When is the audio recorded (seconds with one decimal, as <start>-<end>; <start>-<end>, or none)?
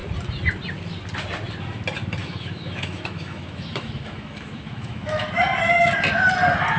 0.0-2.2; 5.3-6.8